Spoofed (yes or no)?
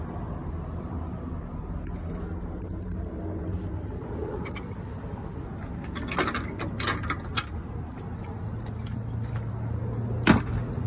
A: no